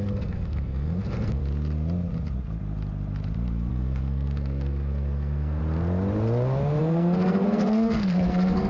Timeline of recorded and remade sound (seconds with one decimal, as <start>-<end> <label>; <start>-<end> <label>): 0.0-1.4 remade; 1.4-3.7 recorded; 3.7-5.6 remade; 5.6-6.8 recorded; 6.8-8.7 remade